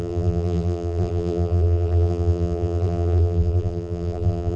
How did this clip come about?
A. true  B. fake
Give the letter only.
B